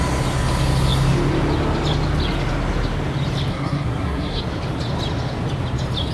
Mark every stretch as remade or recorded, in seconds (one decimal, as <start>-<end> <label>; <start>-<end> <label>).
0.0-3.5 recorded; 3.5-4.4 remade; 4.4-6.1 recorded